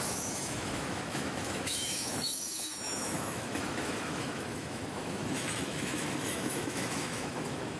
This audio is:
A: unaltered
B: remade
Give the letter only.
B